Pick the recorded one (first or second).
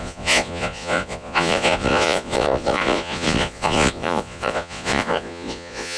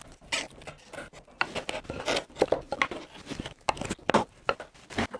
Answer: second